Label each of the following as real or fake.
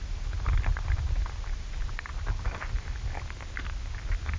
real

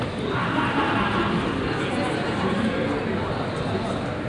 real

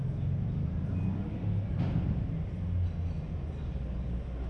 real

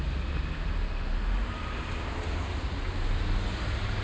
real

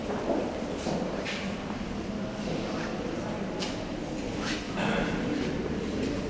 real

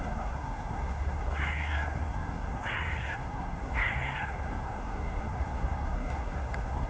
fake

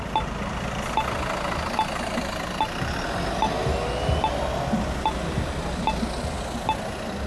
real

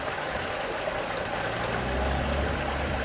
real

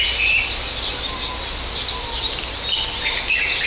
fake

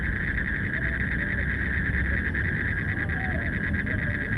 real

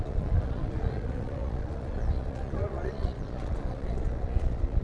fake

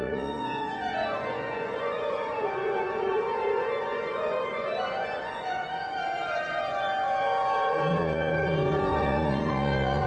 fake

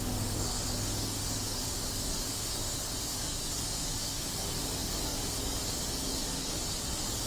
fake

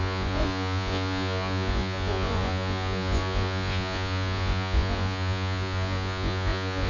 fake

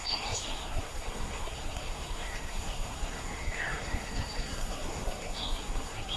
fake